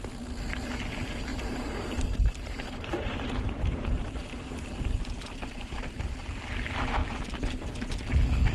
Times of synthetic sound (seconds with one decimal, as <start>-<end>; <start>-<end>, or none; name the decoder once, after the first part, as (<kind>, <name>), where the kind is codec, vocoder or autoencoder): 1.3-6.4 (vocoder, BigVGAN v2); 7.0-7.9